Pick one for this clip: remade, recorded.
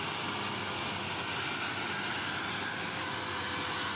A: recorded